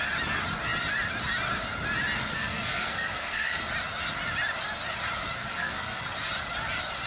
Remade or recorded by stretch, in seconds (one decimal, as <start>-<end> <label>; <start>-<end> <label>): 0.0-2.3 recorded; 2.3-3.6 remade; 3.6-5.4 recorded; 5.4-6.0 remade; 6.0-7.1 recorded